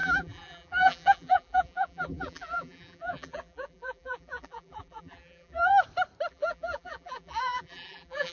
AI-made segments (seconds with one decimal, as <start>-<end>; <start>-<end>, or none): 0.0-5.7; 6.3-8.3